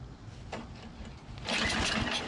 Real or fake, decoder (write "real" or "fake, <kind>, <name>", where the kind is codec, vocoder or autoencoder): real